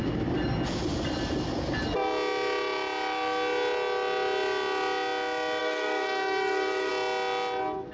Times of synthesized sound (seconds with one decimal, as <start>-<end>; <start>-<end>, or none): 5.6-6.9